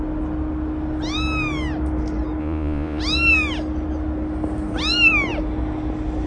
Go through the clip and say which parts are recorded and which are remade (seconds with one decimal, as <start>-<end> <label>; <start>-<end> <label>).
0.0-2.4 recorded; 2.4-3.0 remade; 3.0-6.3 recorded

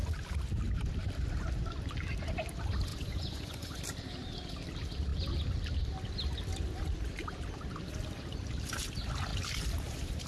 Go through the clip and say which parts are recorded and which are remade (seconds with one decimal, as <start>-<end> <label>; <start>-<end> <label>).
0.0-2.9 recorded; 2.9-3.8 remade; 3.8-10.3 recorded